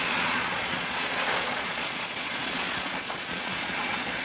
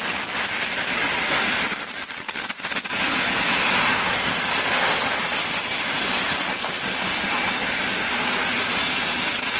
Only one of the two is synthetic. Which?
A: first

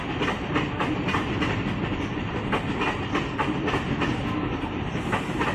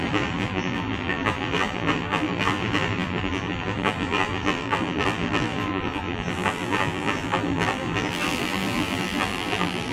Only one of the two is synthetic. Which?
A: second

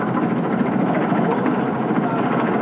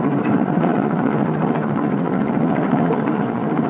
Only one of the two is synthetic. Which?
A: second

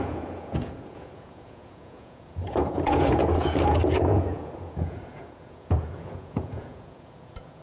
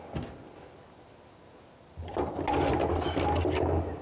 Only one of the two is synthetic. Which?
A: first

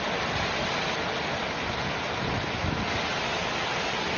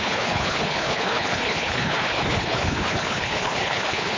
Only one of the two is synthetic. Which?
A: second